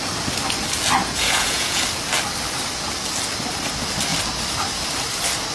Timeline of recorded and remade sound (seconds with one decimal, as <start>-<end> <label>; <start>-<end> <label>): 0.0-1.0 recorded; 1.0-1.8 remade; 1.8-5.5 recorded